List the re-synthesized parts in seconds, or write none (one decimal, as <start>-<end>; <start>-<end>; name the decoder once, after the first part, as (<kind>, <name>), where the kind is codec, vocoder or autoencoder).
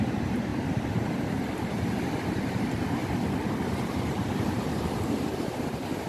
0.0-0.5 (vocoder, BigVGAN v2); 2.4-3.0; 4.2-6.1